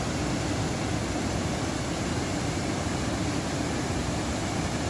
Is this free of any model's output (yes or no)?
yes